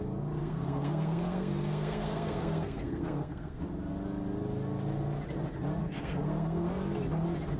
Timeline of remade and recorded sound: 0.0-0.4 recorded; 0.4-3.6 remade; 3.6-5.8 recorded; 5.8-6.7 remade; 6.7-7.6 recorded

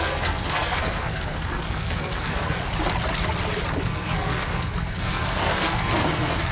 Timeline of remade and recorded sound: 0.0-2.6 remade; 2.6-3.8 recorded; 3.8-6.5 remade